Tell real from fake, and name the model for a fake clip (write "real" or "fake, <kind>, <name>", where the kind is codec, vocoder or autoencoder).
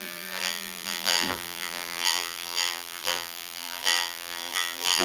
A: fake, vocoder, BigVGAN v2